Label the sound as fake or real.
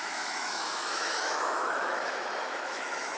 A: fake